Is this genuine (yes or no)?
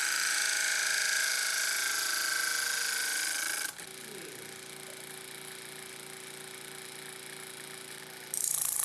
yes